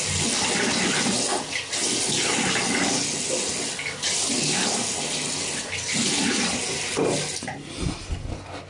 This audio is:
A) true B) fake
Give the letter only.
A